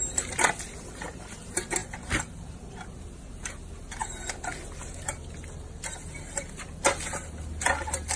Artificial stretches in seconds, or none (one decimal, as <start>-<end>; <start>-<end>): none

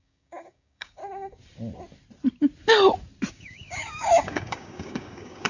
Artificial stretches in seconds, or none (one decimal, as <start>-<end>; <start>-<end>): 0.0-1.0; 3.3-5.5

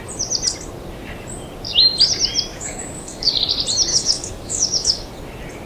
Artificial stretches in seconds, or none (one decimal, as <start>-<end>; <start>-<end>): 2.5-3.3; 3.9-5.2

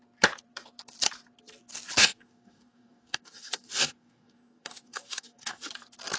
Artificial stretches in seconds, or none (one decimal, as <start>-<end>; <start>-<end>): 2.0-5.7

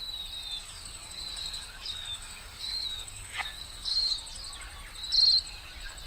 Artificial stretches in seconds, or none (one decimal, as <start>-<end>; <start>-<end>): 0.6-4.1